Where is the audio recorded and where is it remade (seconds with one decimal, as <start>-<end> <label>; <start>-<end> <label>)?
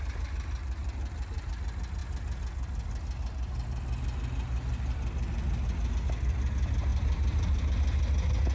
0.0-0.8 recorded; 0.8-1.5 remade; 1.5-6.9 recorded; 6.9-7.6 remade; 7.6-8.5 recorded